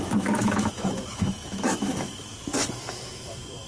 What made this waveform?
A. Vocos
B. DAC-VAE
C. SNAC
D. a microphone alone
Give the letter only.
B